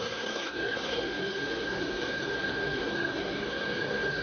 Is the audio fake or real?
fake